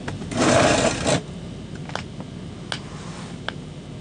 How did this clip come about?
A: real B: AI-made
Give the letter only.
A